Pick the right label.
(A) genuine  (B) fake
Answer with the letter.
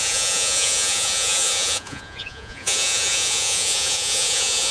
B